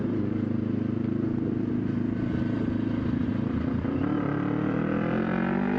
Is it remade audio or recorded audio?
recorded